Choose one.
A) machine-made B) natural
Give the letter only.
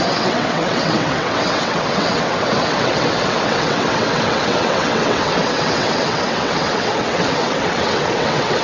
A